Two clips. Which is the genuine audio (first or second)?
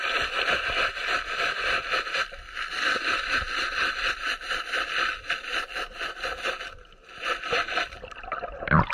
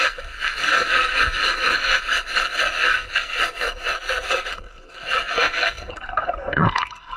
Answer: first